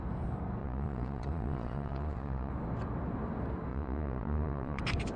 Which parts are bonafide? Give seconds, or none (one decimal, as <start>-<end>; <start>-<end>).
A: 0.0-0.6; 2.5-3.7; 4.8-5.2